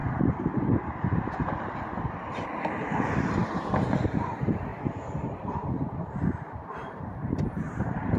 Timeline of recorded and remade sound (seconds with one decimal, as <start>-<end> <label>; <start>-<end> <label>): 0.0-1.3 recorded; 1.3-4.7 remade; 4.7-6.5 recorded; 6.5-8.2 remade